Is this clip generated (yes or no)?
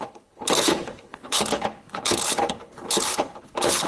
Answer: yes